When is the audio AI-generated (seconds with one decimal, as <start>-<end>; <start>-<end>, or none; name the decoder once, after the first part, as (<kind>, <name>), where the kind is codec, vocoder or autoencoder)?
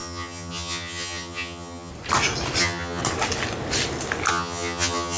0.0-1.9 (vocoder, HiFi-GAN); 2.6-3.0; 4.3-5.2